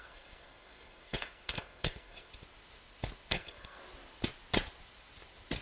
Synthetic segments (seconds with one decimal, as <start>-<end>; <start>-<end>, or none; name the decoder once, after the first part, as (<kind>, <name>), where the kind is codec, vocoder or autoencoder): 0.0-2.3 (codec, SNAC); 3.3-3.8